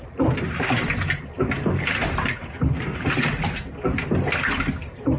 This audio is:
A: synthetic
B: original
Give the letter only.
B